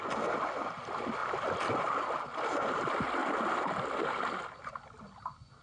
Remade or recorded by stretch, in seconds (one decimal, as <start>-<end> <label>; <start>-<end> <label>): 0.0-5.6 recorded